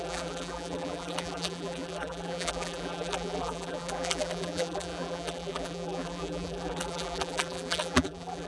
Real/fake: fake